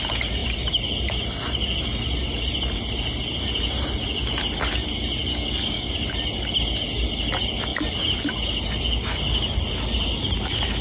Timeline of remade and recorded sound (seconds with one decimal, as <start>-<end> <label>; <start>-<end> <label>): 0.0-5.3 recorded; 5.3-5.9 remade; 5.9-10.8 recorded